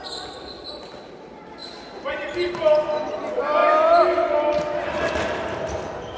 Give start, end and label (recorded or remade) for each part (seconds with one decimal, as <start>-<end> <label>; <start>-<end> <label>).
0.0-6.2 recorded